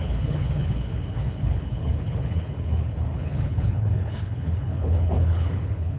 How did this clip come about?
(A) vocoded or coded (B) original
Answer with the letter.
A